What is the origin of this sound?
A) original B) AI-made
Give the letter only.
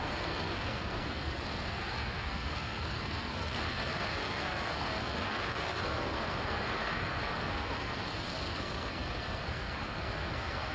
B